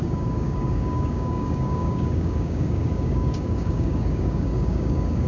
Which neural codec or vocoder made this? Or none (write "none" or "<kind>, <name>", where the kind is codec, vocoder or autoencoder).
codec, DAC